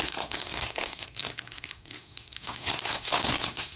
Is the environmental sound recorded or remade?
remade